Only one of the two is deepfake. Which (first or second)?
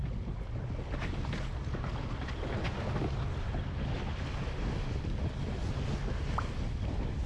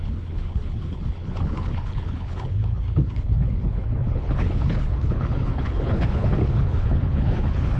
second